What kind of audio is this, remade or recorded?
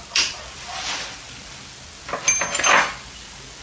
recorded